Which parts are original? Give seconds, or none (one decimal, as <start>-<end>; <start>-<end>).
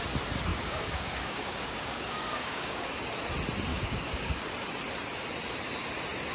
0.0-0.5; 2.9-3.7; 4.4-6.3